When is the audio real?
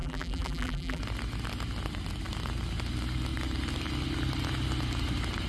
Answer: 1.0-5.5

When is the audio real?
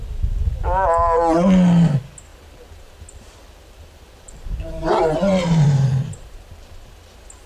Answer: 0.0-2.3; 6.7-7.5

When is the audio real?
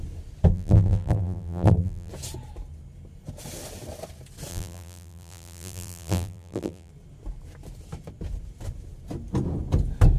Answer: 0.0-0.5; 2.1-4.5; 6.9-10.2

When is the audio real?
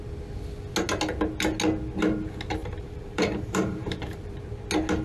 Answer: 0.0-2.6; 4.4-5.0